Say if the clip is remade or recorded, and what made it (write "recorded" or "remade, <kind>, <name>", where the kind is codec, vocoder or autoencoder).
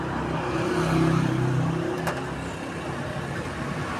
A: recorded